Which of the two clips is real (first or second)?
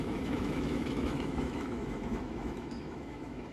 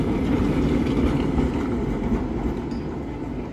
second